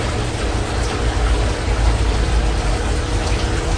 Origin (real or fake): real